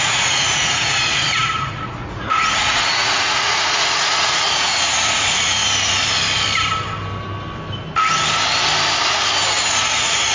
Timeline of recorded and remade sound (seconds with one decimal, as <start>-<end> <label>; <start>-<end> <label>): 0.0-5.6 remade; 5.6-9.7 recorded; 9.7-10.3 remade